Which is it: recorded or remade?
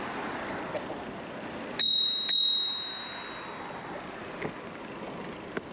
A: recorded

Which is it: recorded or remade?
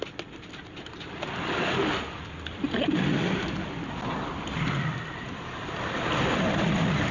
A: recorded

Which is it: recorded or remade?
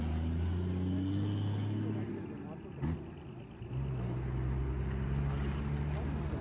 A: recorded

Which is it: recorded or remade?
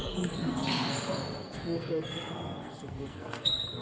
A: remade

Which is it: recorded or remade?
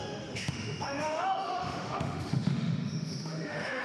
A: remade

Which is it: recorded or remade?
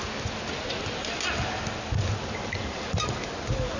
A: recorded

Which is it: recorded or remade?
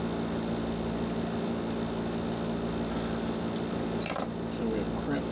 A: recorded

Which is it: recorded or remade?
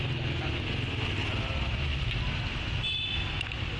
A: recorded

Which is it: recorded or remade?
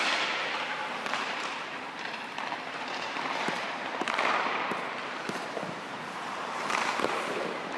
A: remade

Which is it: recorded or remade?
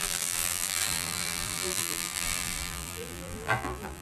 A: remade